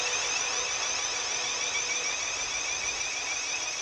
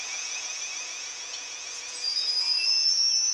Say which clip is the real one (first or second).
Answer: first